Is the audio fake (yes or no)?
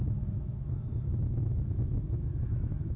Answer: yes